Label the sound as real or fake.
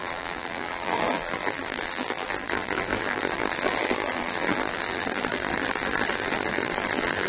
fake